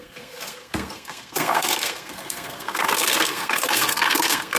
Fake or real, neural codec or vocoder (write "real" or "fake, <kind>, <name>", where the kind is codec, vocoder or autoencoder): fake, codec, SNAC